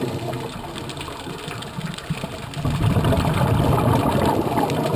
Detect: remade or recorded remade